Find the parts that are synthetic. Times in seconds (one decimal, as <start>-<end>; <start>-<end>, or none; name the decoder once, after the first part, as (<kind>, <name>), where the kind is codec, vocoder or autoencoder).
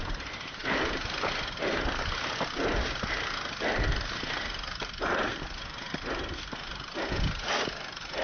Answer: none